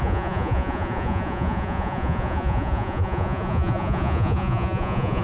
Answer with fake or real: fake